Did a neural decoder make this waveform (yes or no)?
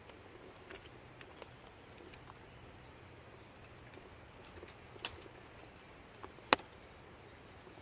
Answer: no